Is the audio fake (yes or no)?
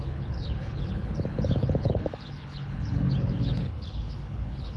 yes